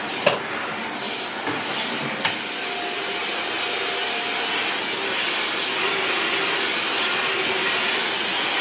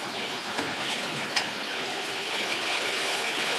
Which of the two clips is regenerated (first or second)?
second